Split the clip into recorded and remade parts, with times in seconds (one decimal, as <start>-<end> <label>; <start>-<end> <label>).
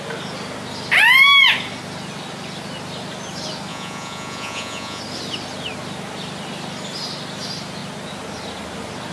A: 0.0-3.7 recorded; 3.7-5.0 remade; 5.0-9.1 recorded